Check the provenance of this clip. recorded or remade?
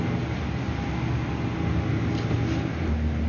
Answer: recorded